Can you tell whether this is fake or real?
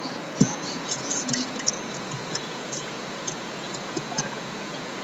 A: fake